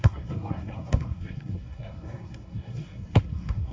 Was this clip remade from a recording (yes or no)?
yes